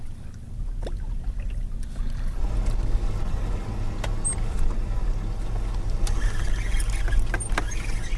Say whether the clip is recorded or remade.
recorded